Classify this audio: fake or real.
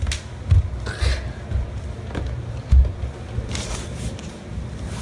real